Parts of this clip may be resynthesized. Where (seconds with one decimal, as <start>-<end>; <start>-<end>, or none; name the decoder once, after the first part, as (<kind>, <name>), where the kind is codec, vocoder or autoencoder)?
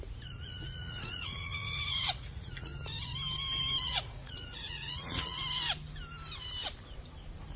0.0-2.7 (vocoder, Vocos); 3.8-5.4